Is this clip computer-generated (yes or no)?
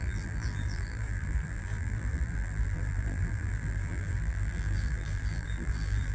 yes